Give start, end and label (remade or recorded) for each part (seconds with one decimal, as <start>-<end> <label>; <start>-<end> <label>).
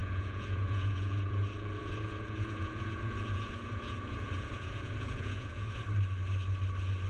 0.0-5.8 remade; 5.8-7.1 recorded